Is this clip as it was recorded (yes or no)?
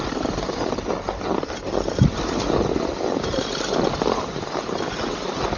yes